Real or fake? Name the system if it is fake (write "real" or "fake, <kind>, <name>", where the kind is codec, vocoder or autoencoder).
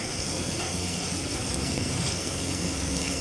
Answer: fake, codec, SNAC